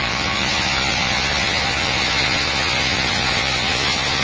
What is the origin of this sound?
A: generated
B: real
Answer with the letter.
A